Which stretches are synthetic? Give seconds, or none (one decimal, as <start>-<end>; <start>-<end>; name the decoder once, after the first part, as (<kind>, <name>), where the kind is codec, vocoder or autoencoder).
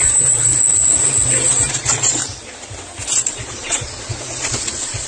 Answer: 0.0-0.5 (vocoder, Vocos); 1.7-2.2; 3.3-5.1